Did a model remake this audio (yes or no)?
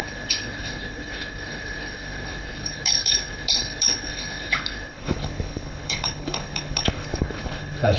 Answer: yes